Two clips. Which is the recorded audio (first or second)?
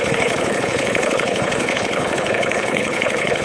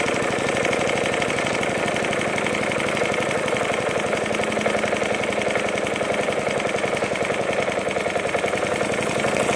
second